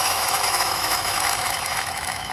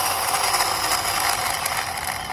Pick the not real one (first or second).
first